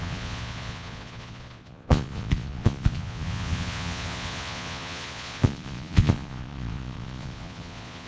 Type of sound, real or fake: fake